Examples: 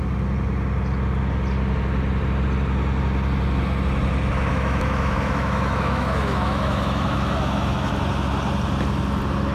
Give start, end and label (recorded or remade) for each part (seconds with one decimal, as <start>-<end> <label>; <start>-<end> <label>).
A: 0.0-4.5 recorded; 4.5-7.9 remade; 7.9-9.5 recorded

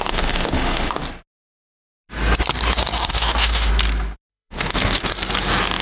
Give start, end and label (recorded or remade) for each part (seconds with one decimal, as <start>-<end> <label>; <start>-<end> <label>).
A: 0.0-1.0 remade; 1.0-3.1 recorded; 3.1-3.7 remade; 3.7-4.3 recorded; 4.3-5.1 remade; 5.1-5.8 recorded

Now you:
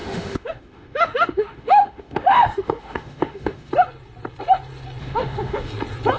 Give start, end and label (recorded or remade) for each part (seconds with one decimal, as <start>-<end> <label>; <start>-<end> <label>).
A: 0.0-3.7 remade; 3.7-5.0 recorded; 5.0-5.7 remade; 5.7-6.2 recorded